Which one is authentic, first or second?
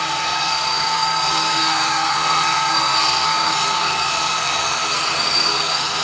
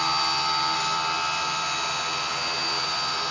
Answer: second